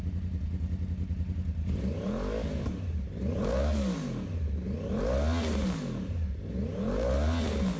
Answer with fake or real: real